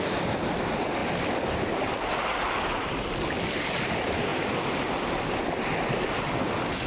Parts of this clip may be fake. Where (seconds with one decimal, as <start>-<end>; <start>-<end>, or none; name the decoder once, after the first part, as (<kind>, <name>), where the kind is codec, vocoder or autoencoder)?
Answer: none